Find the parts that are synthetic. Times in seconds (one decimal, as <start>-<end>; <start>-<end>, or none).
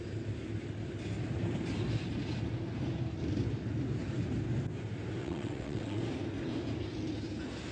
5.2-6.0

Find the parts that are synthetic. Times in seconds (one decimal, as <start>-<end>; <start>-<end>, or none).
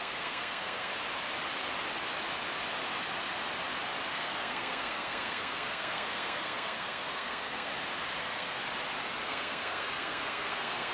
0.0-0.9; 4.1-7.7; 8.2-8.6; 9.3-10.9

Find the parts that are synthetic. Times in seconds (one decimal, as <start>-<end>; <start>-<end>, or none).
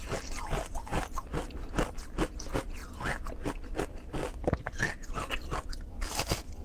none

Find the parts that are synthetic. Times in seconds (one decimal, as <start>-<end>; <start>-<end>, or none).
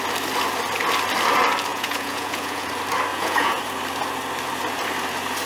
1.7-2.7; 3.1-3.6